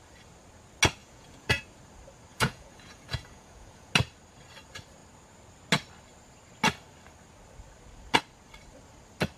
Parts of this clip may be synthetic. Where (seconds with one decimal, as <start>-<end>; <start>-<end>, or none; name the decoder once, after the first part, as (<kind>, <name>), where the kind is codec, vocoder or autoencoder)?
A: 1.0-1.6 (vocoder, Vocos); 2.3-3.9